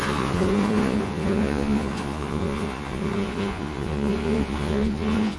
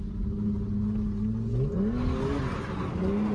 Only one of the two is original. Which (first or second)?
second